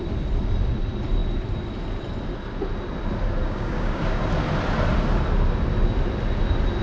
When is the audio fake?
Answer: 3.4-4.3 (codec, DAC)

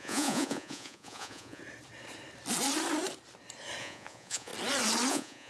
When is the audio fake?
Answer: 0.0-1.6 (vocoder, Vocos); 3.8-4.5; 5.1-5.5